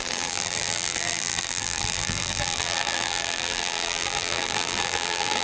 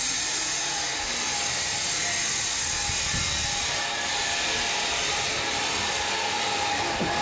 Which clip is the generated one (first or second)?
first